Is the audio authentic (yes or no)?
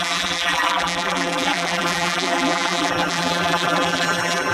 no